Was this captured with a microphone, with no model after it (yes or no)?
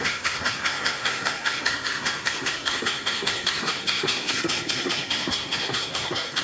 no